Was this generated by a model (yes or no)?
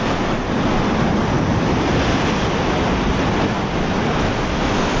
no